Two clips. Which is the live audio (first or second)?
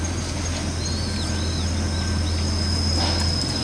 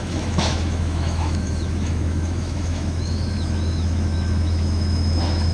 first